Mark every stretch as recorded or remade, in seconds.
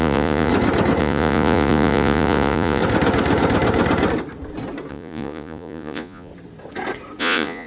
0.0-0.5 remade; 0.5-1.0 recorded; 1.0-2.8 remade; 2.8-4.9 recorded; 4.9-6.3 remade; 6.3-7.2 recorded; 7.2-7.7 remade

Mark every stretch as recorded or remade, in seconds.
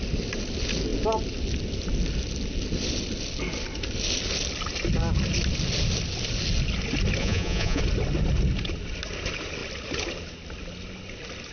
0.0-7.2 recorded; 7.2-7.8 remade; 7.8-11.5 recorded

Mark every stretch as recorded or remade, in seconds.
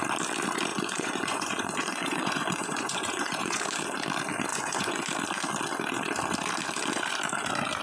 0.0-0.7 recorded; 0.7-3.6 remade; 3.6-4.5 recorded; 4.5-5.0 remade; 5.0-7.8 recorded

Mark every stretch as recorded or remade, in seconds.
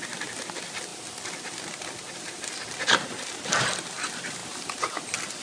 0.0-5.4 recorded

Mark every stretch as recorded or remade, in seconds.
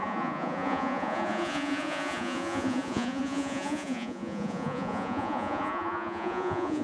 0.0-6.8 remade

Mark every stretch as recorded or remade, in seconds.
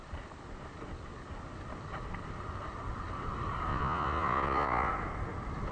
0.0-3.7 recorded; 3.7-4.9 remade; 4.9-5.7 recorded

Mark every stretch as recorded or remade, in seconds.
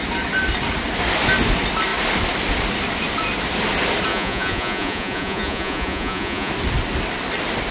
0.0-4.1 recorded; 4.1-6.5 remade; 6.5-7.7 recorded